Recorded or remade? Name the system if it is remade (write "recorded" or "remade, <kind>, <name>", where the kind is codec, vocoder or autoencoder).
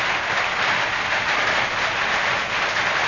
recorded